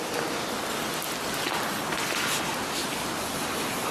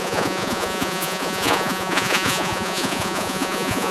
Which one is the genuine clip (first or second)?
first